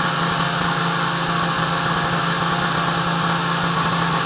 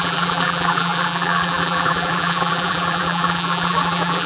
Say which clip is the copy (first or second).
second